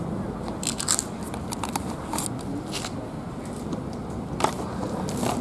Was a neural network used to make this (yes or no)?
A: no